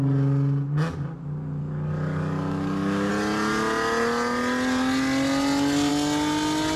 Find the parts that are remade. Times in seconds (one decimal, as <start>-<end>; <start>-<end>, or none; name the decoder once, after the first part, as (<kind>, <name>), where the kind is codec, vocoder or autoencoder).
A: 1.6-3.1 (codec, DAC)